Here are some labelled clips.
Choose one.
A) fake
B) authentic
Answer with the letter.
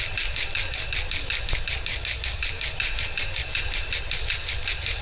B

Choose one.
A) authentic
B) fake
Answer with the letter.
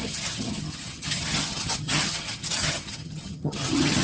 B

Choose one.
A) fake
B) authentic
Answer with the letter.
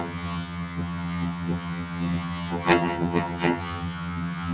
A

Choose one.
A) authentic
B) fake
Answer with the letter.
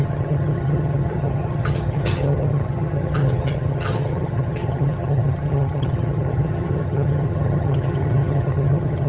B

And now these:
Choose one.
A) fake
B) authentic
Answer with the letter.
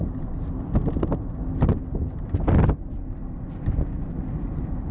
B